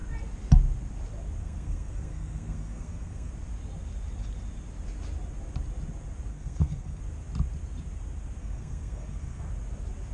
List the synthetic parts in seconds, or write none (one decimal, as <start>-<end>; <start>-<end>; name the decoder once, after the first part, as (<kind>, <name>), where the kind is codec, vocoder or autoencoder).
1.4-3.3 (codec, SNAC); 6.3-7.0; 8.4-9.5